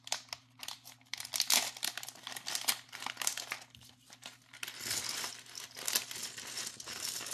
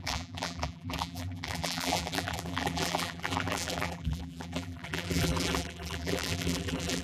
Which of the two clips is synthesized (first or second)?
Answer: second